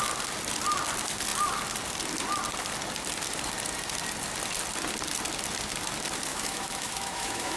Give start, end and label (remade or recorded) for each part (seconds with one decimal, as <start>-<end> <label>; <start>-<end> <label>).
0.0-6.3 recorded; 6.3-7.6 remade